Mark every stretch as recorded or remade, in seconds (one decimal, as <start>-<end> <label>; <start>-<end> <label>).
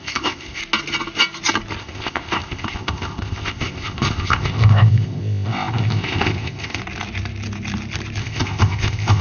0.0-0.6 remade; 0.6-1.8 recorded; 1.8-6.8 remade; 6.8-8.2 recorded; 8.2-9.2 remade